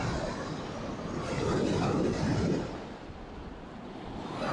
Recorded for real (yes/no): yes